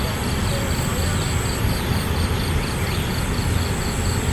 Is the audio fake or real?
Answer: real